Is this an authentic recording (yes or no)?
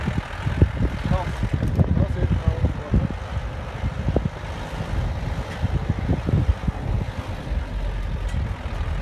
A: yes